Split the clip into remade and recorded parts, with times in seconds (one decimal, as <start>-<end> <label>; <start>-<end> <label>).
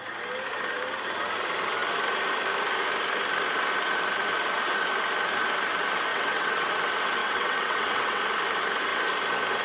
0.0-6.1 recorded; 6.1-6.7 remade; 6.7-7.2 recorded; 7.2-8.2 remade; 8.2-9.6 recorded